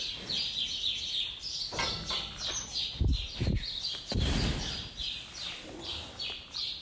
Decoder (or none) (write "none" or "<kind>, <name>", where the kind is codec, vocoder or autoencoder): none